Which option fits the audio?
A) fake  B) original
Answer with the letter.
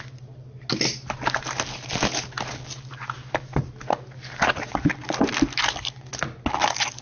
B